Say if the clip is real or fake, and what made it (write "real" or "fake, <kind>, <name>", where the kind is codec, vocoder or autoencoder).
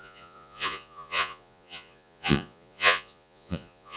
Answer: fake, vocoder, Vocos